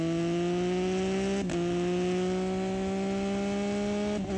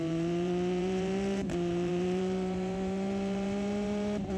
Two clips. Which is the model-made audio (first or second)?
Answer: second